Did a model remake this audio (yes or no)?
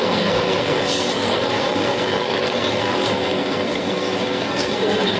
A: yes